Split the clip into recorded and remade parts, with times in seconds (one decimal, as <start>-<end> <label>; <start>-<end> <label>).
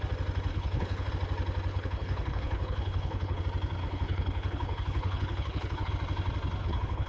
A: 0.0-0.5 recorded; 0.5-1.1 remade; 1.1-1.7 recorded; 1.7-3.4 remade; 3.4-3.8 recorded; 3.8-5.9 remade; 5.9-6.6 recorded; 6.6-7.1 remade